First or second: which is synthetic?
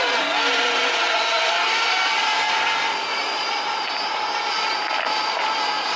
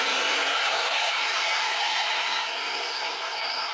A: second